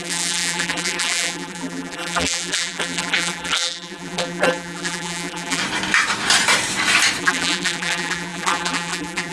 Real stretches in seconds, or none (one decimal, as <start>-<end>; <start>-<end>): 5.6-7.2